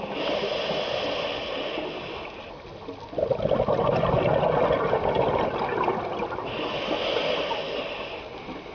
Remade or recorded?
recorded